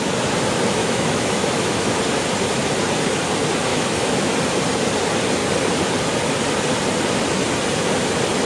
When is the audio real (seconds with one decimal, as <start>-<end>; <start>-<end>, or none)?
0.0-0.8; 1.9-3.7; 4.3-8.4